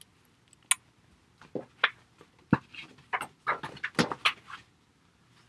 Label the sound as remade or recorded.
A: recorded